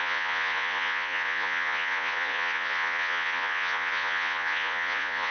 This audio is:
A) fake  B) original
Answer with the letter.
A